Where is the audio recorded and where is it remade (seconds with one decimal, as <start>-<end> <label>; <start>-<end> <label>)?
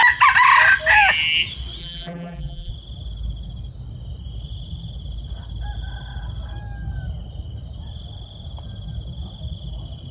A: 0.0-1.8 recorded; 1.8-2.7 remade; 2.7-10.1 recorded